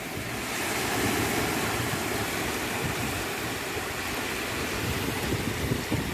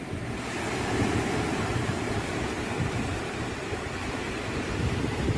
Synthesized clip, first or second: second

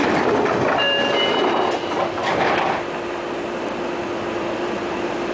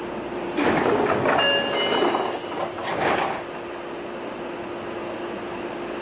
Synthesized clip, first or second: first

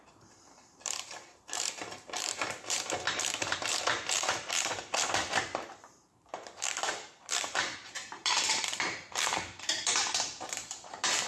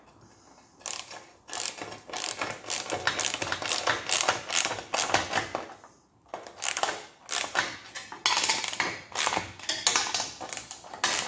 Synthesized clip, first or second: first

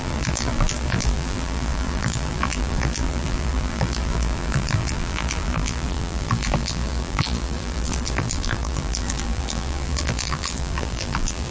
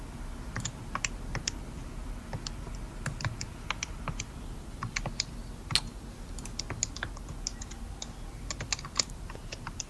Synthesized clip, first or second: first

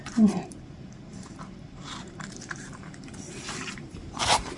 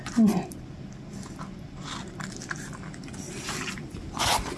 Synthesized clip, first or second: first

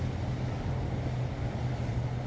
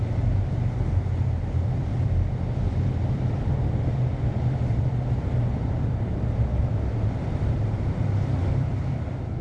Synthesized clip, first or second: second